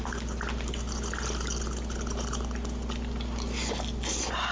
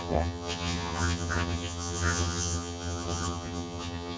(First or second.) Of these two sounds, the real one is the first